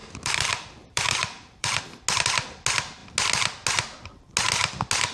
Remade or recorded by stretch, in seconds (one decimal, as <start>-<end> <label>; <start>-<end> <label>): 0.0-1.8 remade; 1.8-5.1 recorded